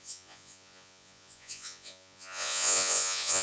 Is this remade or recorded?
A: remade